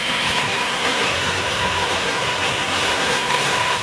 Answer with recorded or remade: remade